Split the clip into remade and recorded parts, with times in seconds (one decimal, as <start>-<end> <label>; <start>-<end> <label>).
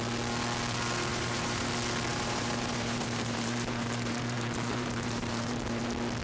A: 0.0-1.1 recorded; 1.1-1.7 remade; 1.7-2.1 recorded; 2.1-5.8 remade; 5.8-6.2 recorded